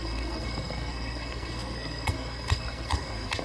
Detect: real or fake fake